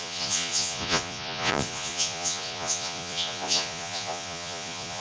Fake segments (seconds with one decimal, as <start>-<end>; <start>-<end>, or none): 0.0-5.0